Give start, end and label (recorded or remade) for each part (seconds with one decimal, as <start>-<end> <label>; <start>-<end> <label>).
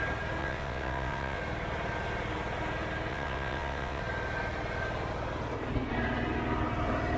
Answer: 0.0-0.4 recorded; 0.4-1.4 remade; 1.4-3.1 recorded; 3.1-4.0 remade; 4.0-7.2 recorded